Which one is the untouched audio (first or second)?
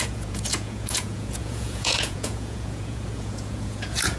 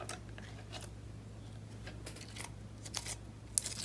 second